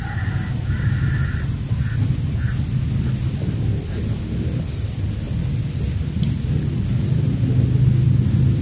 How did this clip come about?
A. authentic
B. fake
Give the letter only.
A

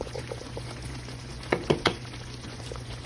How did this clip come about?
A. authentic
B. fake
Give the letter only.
B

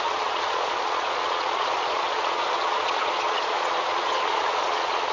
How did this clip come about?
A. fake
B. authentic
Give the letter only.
A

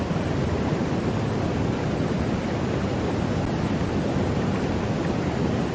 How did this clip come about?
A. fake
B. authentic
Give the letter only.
B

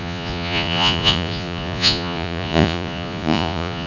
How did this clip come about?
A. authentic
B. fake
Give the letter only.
B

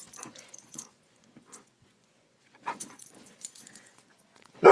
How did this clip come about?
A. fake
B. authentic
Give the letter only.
A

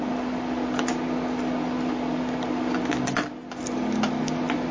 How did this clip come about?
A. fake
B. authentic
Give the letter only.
B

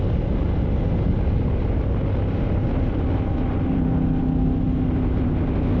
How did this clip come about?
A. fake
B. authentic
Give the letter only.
B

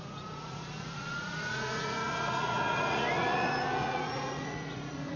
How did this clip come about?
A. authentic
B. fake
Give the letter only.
B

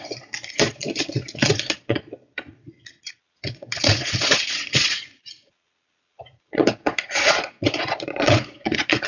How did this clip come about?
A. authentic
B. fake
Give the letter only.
B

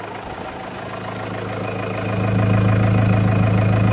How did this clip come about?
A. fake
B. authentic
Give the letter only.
B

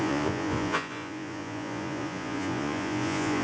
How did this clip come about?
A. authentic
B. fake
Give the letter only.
B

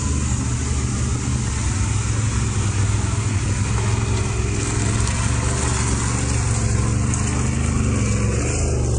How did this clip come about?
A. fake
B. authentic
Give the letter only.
B